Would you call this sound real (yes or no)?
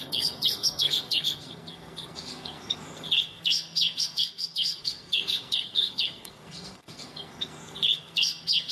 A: no